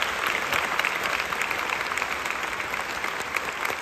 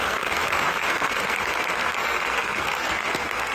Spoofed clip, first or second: second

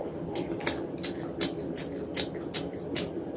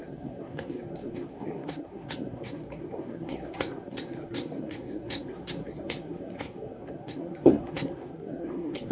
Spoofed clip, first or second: second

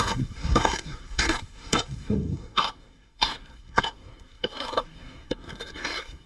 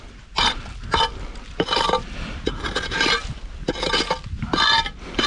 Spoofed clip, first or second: first